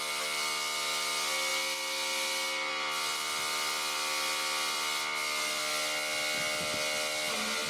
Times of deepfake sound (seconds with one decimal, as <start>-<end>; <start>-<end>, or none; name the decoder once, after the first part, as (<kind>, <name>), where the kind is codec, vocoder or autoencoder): none